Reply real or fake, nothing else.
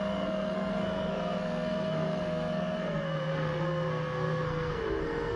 fake